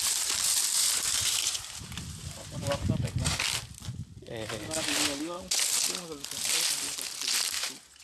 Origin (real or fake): real